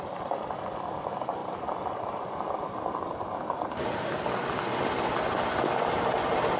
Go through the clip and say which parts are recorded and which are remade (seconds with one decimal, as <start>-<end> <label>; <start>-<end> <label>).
0.0-6.6 recorded